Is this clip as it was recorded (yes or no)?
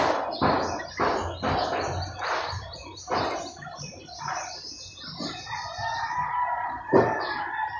yes